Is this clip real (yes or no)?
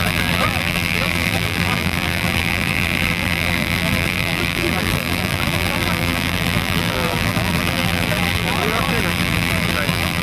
no